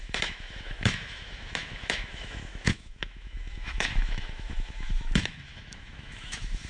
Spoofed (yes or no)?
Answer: yes